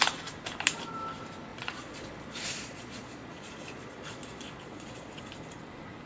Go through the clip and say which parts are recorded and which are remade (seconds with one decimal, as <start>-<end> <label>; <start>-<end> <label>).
0.0-1.5 recorded; 1.5-5.2 remade; 5.2-6.1 recorded